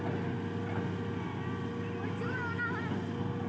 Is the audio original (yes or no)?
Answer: yes